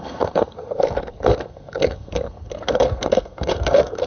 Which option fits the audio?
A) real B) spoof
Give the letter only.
B